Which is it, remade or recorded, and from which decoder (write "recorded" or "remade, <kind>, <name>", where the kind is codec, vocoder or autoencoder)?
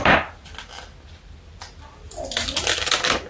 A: recorded